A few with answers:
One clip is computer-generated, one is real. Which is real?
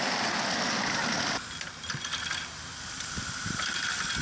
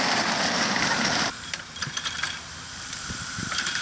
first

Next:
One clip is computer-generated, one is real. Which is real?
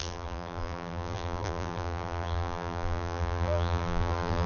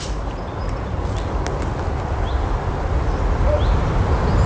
second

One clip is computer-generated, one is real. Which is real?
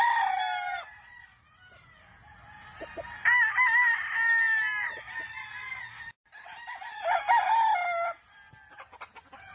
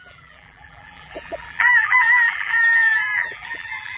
first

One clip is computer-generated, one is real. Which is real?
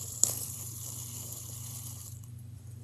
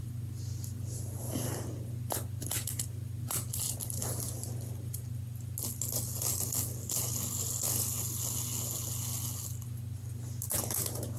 second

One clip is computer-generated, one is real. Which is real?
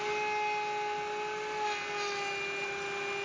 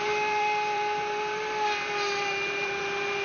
first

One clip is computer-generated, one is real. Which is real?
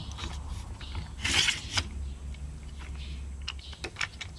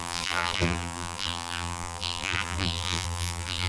first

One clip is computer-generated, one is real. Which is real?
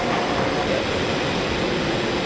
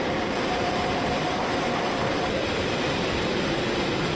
first